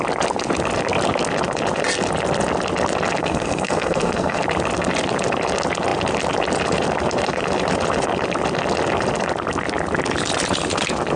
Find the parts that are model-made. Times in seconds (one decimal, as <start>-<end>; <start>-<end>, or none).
3.2-4.4